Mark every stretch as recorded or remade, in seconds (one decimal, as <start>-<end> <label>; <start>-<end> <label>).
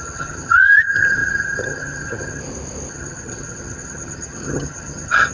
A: 0.0-2.4 remade; 2.4-2.9 recorded; 2.9-5.3 remade